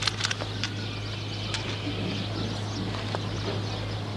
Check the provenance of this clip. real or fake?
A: real